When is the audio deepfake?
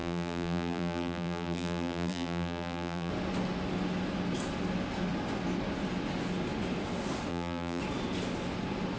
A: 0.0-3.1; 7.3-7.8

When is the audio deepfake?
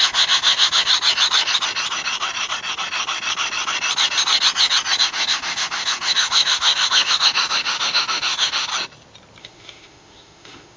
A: 0.0-0.9; 5.0-8.7; 9.4-10.8